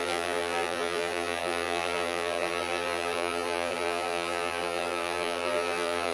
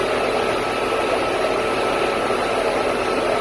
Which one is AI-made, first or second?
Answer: first